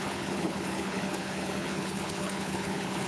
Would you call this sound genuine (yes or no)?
no